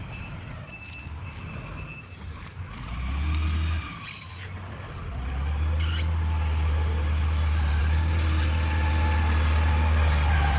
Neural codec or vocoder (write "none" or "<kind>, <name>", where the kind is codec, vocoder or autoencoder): none